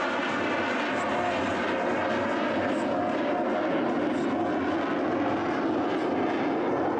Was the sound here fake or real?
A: real